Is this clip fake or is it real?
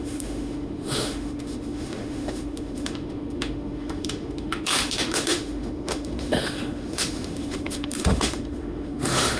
fake